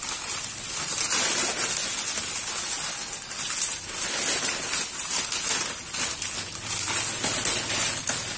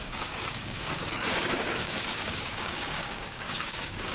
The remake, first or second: second